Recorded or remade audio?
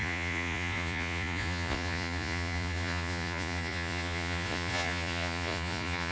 remade